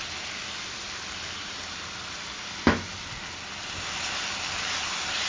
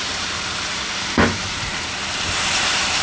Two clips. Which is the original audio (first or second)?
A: first